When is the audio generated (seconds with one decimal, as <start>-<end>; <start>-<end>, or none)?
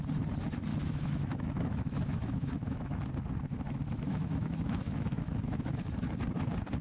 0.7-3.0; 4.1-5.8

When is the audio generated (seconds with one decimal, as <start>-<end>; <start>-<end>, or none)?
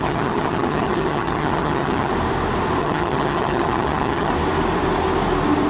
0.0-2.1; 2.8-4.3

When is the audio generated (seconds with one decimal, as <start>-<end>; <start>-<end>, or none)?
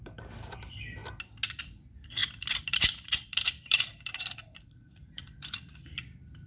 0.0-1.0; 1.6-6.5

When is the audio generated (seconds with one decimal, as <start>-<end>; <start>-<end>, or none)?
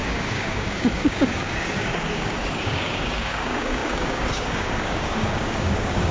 0.0-6.1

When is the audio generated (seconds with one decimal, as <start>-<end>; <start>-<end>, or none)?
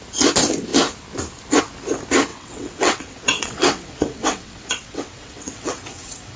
2.3-6.4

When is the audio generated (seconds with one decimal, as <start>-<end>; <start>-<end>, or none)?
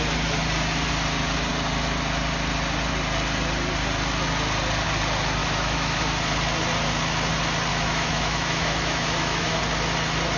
5.4-6.0; 7.7-9.6